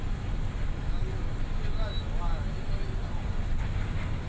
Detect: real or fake real